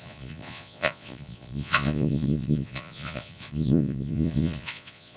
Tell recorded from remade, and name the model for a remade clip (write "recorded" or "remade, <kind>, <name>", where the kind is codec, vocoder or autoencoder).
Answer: remade, vocoder, Vocos